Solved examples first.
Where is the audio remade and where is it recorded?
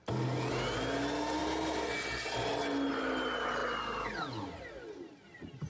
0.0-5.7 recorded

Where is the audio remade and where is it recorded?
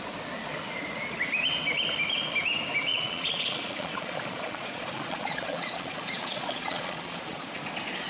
0.0-2.9 recorded; 2.9-7.6 remade; 7.6-8.1 recorded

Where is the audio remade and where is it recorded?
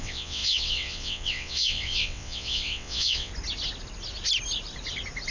0.0-3.3 remade; 3.3-5.3 recorded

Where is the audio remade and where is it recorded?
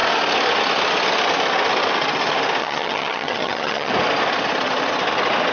0.0-2.6 recorded; 2.6-3.9 remade; 3.9-5.5 recorded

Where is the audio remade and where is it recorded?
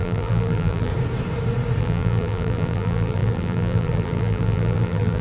0.0-0.9 remade; 0.9-1.8 recorded; 1.8-5.2 remade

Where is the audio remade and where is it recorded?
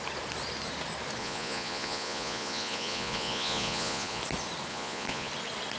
0.0-1.2 recorded; 1.2-4.2 remade; 4.2-4.7 recorded; 4.7-5.3 remade; 5.3-5.8 recorded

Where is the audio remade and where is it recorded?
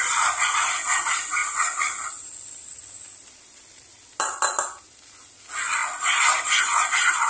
0.0-1.4 recorded; 1.4-3.4 remade; 3.4-7.3 recorded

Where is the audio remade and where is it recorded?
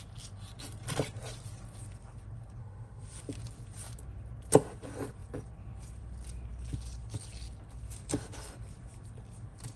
0.0-2.6 recorded; 2.6-3.2 remade; 3.2-9.8 recorded